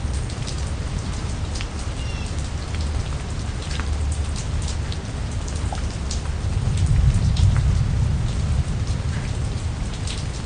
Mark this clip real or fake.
real